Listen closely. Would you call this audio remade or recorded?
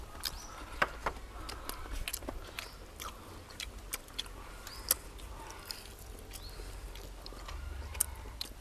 recorded